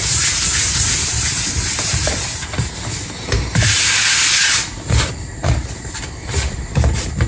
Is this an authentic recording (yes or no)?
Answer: no